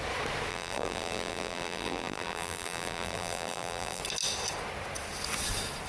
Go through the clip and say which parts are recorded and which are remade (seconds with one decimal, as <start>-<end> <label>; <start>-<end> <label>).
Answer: 0.0-0.5 recorded; 0.5-4.0 remade; 4.0-5.9 recorded